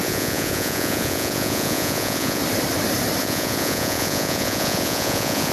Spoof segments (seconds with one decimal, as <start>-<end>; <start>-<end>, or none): 0.0-2.4; 3.2-5.5